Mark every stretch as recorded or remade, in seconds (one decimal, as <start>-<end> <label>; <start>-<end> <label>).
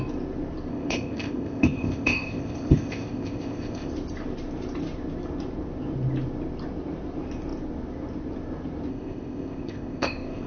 0.0-0.7 recorded; 0.7-3.9 remade; 3.9-8.9 recorded; 8.9-10.5 remade